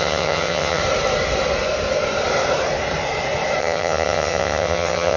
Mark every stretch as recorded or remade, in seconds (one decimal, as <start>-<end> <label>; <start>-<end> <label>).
0.0-0.8 remade; 0.8-3.6 recorded; 3.6-5.2 remade